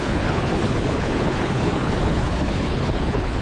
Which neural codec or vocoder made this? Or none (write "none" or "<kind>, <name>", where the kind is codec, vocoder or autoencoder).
codec, HILCodec